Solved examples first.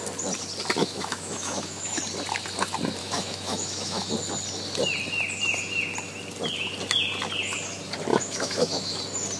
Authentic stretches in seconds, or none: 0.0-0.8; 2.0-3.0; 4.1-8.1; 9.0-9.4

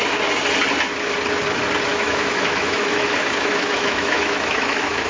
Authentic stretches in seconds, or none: 0.0-1.9

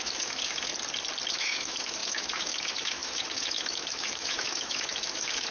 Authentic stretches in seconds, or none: 0.7-1.3

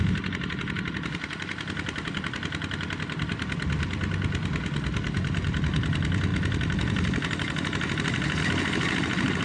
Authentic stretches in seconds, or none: 0.0-9.4

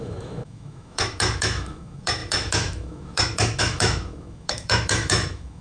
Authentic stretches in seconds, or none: none

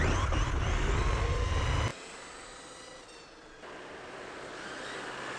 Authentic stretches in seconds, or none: 0.0-5.4

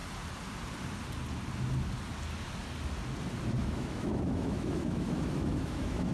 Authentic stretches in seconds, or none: 0.0-3.6